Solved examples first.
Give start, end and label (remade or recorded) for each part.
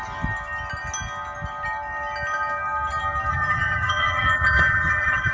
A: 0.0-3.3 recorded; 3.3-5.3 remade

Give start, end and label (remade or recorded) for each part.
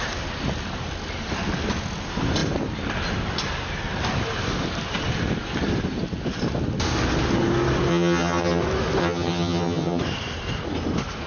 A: 0.0-7.9 recorded; 7.9-8.6 remade; 8.6-9.0 recorded; 9.0-10.0 remade; 10.0-11.3 recorded